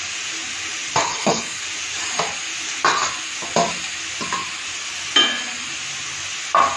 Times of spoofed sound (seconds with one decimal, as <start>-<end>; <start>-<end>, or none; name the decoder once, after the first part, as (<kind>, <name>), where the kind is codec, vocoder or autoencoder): 1.0-1.6 (codec, HILCodec)